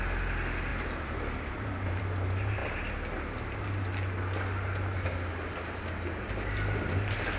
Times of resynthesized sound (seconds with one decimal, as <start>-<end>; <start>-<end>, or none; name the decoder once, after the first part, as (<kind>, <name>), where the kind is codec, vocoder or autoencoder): 0.7-2.0 (vocoder, BigVGAN v2)